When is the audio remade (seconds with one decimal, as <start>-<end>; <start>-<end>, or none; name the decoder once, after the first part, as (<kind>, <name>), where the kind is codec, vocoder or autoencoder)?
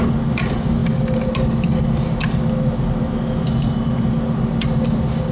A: none